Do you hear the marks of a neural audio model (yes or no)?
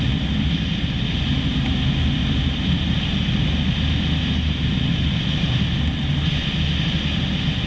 no